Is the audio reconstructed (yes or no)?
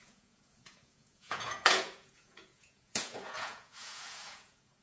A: yes